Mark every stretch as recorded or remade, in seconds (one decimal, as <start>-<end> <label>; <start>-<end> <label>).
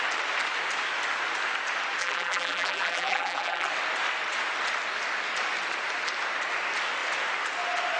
0.0-2.0 recorded; 2.0-3.7 remade; 3.7-8.0 recorded